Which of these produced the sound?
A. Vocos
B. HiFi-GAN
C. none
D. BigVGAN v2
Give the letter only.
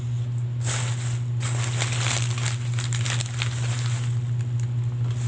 C